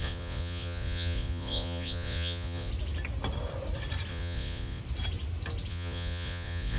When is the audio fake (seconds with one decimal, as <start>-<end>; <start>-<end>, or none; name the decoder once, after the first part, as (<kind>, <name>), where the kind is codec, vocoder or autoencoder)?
0.0-2.7 (vocoder, Vocos); 4.1-4.8; 5.7-6.8